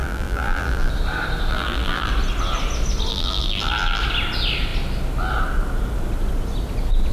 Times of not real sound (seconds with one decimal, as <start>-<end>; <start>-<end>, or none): 0.0-0.9; 1.5-2.1; 3.1-4.0

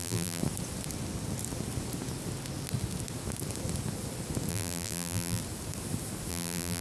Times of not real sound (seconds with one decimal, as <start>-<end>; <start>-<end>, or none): 0.0-0.4; 4.5-5.4; 6.3-6.8